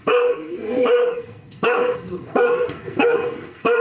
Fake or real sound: fake